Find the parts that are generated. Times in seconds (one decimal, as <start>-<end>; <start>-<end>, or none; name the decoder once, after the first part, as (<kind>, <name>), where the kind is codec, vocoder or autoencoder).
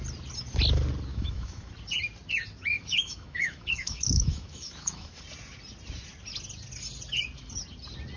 1.1-1.7 (autoencoder, DAC-VAE); 2.7-5.2